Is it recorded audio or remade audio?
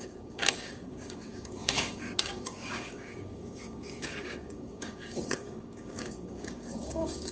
remade